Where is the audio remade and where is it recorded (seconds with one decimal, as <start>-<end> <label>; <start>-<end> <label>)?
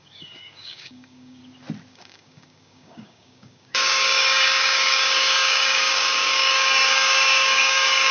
0.0-1.4 remade; 1.4-1.9 recorded; 1.9-8.1 remade